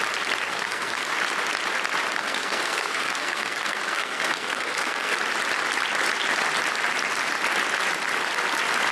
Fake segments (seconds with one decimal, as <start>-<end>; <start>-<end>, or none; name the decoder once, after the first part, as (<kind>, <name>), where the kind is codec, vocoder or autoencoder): 0.5-1.1 (codec, SNAC); 2.2-5.2